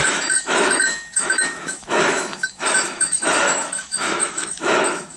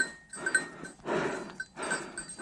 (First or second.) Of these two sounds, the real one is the second